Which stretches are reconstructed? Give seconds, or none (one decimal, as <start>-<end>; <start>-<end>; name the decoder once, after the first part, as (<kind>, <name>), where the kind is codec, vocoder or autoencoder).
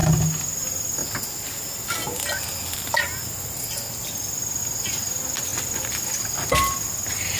none